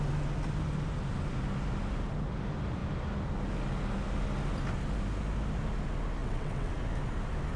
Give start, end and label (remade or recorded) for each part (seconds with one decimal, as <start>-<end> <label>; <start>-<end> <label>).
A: 0.0-6.2 recorded; 6.2-6.7 remade; 6.7-7.6 recorded